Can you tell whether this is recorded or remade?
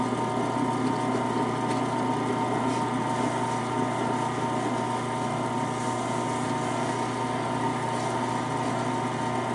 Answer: recorded